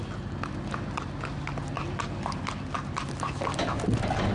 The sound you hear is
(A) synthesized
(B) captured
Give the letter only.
B